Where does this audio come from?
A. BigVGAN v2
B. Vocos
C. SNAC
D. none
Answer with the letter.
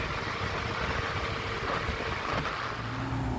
D